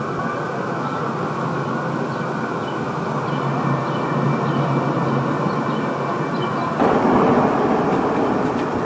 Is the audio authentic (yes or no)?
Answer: yes